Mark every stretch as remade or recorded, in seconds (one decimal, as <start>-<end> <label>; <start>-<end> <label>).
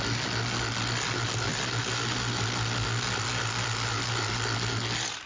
0.0-5.3 recorded